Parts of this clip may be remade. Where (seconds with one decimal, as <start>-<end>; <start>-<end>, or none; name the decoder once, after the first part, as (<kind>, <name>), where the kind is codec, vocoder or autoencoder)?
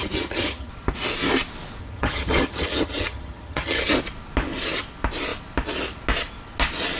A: 0.0-0.7 (vocoder, HiFi-GAN); 1.8-3.9